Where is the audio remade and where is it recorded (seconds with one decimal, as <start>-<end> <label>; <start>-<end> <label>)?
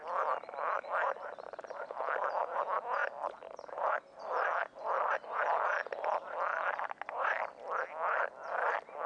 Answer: 0.0-9.1 recorded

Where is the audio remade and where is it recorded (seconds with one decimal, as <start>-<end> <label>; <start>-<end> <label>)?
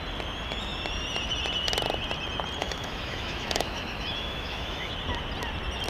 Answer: 0.0-2.6 recorded; 2.6-4.9 remade; 4.9-5.9 recorded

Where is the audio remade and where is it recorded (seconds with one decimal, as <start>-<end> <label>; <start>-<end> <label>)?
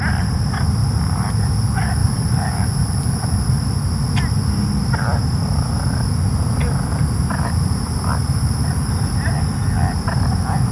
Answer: 0.0-0.8 recorded; 0.8-1.3 remade; 1.3-2.0 recorded; 2.0-2.9 remade; 2.9-6.9 recorded; 6.9-8.6 remade; 8.6-10.7 recorded